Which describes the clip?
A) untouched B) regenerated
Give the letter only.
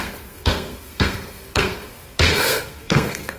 B